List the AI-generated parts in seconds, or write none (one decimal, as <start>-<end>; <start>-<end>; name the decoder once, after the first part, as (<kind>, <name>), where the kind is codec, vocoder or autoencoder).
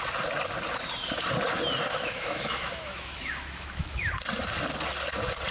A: 1.9-4.1 (autoencoder, DAC-VAE)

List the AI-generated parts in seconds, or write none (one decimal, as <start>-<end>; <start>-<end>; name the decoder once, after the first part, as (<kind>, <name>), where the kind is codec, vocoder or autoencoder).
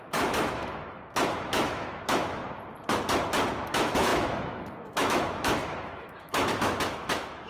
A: 0.0-2.4 (autoencoder, DAC-VAE); 3.6-7.5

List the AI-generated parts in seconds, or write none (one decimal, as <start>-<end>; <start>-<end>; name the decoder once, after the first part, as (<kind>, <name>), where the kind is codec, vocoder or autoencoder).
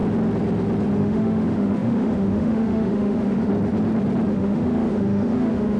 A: 1.0-3.5 (autoencoder, DAC-VAE); 4.3-5.8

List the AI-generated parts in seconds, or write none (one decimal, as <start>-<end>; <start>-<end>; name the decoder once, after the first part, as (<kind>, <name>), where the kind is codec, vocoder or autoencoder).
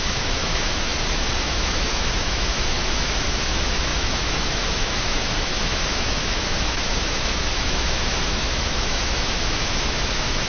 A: 0.0-0.9 (autoencoder, DAC-VAE); 1.4-10.5